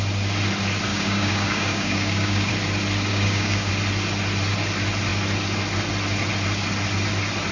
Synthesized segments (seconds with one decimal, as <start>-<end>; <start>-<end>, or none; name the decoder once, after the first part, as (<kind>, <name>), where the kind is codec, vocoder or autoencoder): 0.9-2.5 (codec, DAC); 3.1-3.7